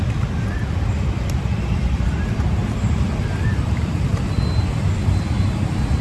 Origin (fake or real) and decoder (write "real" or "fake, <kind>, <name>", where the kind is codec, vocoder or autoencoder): fake, vocoder, BigVGAN v2